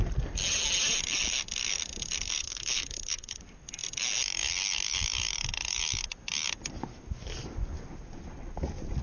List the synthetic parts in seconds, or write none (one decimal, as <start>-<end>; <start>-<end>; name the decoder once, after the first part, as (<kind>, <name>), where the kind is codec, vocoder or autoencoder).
2.4-3.4 (codec, HILCodec)